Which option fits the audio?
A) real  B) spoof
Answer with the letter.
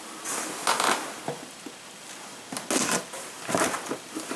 A